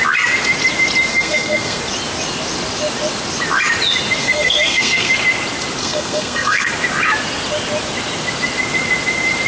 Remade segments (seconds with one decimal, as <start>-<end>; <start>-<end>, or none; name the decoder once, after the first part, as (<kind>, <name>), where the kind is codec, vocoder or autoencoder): 1.1-1.8 (codec, SNAC); 4.2-5.1; 5.8-6.7